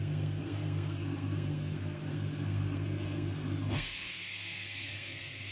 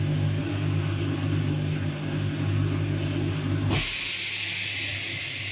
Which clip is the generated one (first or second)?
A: first